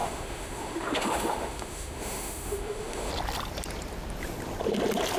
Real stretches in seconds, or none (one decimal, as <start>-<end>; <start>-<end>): 3.1-5.2